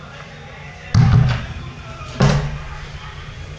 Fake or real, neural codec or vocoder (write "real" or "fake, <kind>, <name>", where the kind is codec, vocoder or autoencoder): real